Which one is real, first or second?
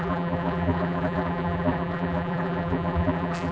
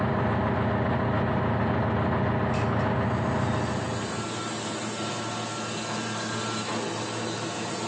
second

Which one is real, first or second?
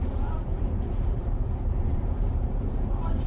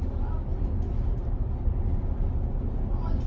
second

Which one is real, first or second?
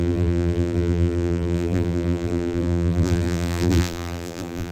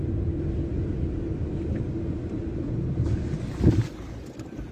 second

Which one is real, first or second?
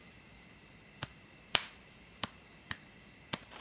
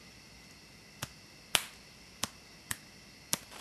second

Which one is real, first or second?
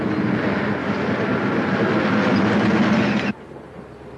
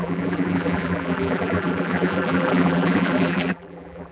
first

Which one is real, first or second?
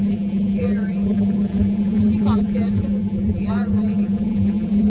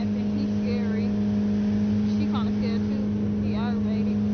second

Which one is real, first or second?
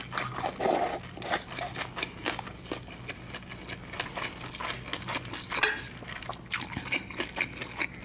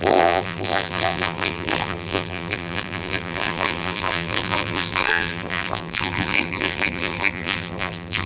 first